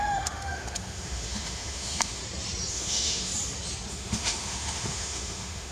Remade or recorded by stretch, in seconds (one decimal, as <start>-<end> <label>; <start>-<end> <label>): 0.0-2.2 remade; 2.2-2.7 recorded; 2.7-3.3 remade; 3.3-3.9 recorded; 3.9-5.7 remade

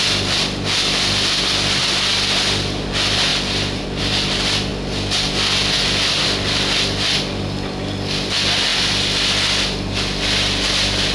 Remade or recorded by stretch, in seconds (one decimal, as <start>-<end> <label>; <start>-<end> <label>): 0.0-11.1 recorded

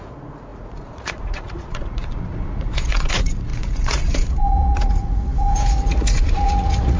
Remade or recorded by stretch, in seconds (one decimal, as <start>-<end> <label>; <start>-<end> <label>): 0.0-7.0 remade